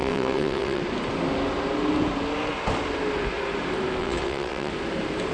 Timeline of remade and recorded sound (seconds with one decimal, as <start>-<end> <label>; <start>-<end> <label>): 0.0-0.8 remade; 0.8-4.0 recorded; 4.0-4.7 remade; 4.7-5.3 recorded